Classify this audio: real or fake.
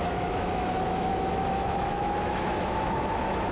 fake